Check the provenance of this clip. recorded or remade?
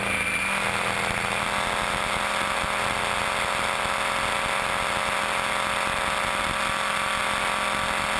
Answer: recorded